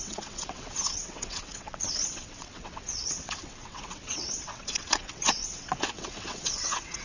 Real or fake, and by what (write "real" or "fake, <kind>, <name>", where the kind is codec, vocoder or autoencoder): fake, vocoder, WaveNeXt